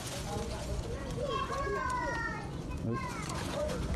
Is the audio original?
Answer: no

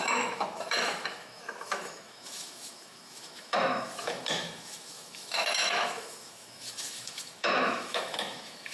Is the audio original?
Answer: no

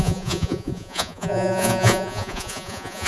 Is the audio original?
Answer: no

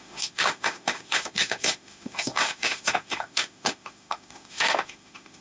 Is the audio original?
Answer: no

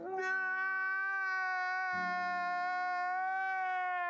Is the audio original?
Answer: yes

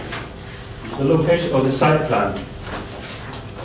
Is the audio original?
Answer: yes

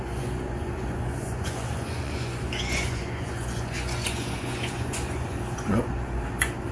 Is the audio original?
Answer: no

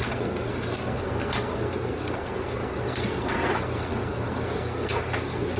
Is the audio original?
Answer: no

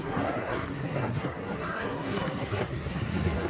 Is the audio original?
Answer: no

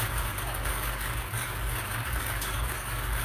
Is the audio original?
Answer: no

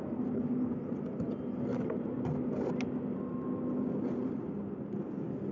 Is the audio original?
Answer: yes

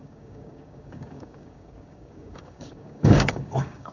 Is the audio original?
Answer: no